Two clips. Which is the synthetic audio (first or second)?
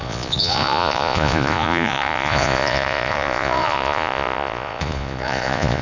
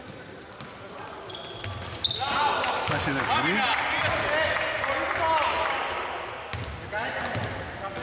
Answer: first